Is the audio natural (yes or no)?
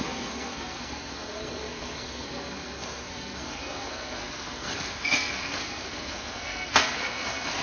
no